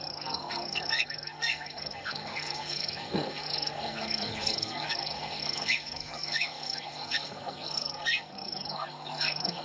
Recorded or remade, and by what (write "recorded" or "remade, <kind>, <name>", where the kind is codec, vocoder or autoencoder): remade, codec, SNAC